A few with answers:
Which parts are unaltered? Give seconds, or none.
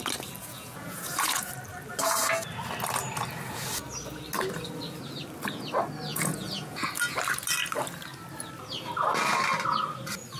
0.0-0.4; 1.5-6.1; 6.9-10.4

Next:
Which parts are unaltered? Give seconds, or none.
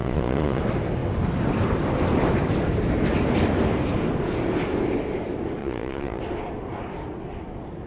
0.6-5.6; 6.2-7.9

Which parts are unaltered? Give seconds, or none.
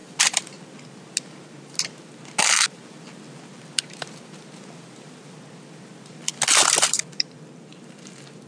0.0-8.5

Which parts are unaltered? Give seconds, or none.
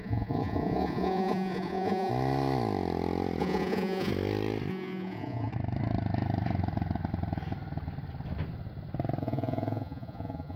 2.1-3.4; 4.1-4.7; 5.5-9.2